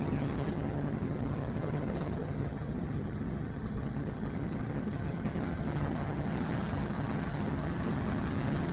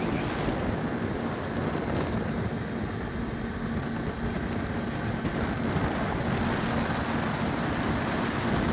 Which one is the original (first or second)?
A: second